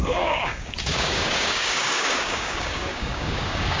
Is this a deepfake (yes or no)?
yes